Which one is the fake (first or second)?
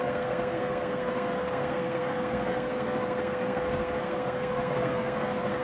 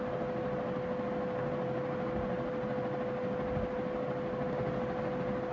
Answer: first